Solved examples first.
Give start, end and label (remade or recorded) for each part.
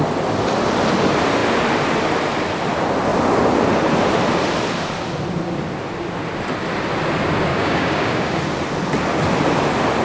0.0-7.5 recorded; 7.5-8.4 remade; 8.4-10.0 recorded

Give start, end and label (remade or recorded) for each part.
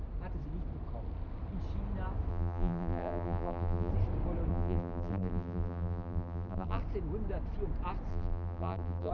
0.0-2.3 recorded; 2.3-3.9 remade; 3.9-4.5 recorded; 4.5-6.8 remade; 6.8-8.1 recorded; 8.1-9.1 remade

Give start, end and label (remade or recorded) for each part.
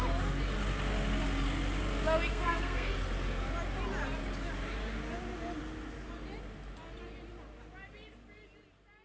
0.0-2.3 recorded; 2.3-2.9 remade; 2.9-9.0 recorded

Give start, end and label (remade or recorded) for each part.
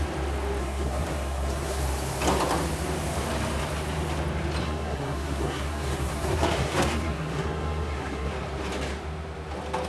0.0-0.6 recorded; 0.6-1.8 remade; 1.8-4.6 recorded; 4.6-8.3 remade; 8.3-9.9 recorded